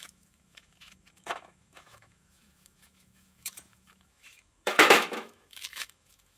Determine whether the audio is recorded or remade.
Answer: remade